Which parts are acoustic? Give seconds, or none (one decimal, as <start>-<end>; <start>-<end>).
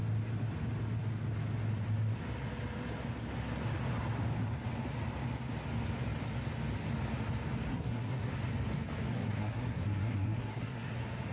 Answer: 0.0-7.7; 8.3-9.1; 10.9-11.3